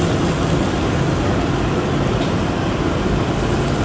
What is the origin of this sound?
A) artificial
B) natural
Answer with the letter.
A